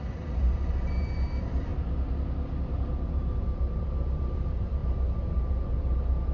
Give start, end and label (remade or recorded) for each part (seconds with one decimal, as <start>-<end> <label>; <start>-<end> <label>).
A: 0.0-1.7 remade; 1.7-2.7 recorded; 2.7-4.8 remade; 4.8-5.7 recorded; 5.7-6.3 remade

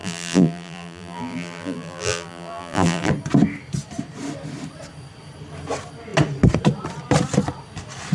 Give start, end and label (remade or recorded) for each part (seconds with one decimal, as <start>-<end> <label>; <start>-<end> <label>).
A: 0.0-3.1 remade; 3.1-8.1 recorded

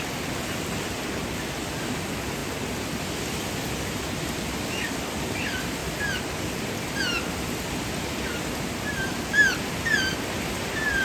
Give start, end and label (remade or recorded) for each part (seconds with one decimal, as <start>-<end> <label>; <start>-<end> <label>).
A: 0.0-5.8 recorded; 5.8-7.0 remade; 7.0-11.0 recorded